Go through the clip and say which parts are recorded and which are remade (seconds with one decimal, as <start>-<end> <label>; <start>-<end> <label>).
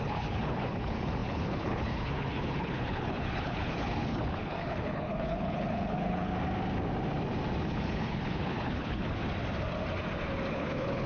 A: 0.0-6.3 remade; 6.3-7.6 recorded; 7.6-9.2 remade; 9.2-10.5 recorded; 10.5-11.1 remade